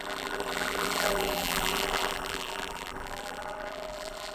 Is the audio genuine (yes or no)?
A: no